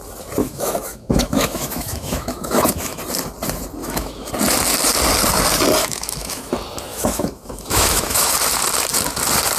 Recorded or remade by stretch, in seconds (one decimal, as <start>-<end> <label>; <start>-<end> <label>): 0.0-0.4 recorded; 0.4-3.0 remade; 3.0-3.8 recorded; 3.8-4.3 remade; 4.3-5.8 recorded; 5.8-6.5 remade; 6.5-6.9 recorded; 6.9-8.3 remade; 8.3-9.6 recorded